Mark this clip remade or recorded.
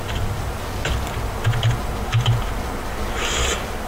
recorded